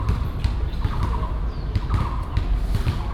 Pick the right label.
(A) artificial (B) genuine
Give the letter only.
B